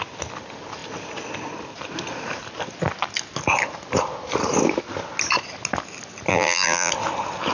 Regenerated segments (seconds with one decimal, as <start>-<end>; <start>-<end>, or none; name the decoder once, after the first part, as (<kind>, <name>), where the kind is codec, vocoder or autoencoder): 6.3-6.9 (vocoder, BigVGAN v2)